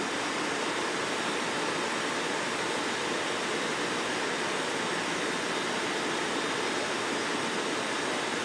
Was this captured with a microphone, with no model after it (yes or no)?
yes